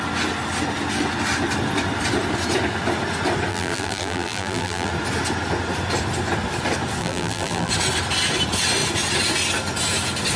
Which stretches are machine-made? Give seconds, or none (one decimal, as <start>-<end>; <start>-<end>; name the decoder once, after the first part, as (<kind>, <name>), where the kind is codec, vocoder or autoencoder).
3.5-4.9 (vocoder, BigVGAN v2); 7.0-7.7